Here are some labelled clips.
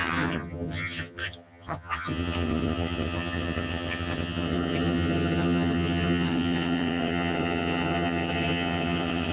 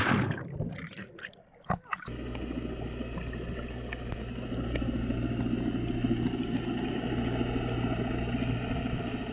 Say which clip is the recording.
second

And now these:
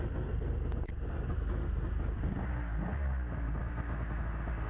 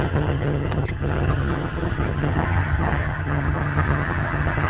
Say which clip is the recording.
first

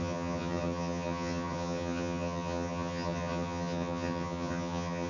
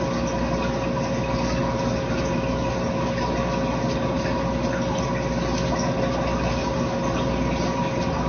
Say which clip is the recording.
second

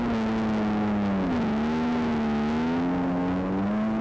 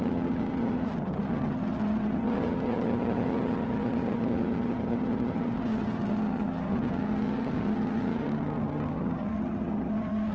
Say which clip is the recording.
first